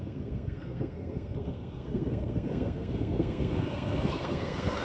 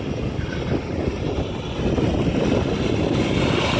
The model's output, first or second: first